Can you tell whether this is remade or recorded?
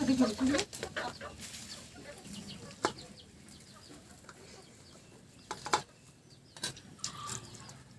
recorded